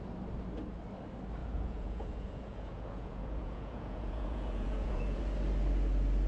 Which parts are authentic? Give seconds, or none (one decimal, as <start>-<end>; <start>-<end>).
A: 0.0-1.4; 5.2-6.3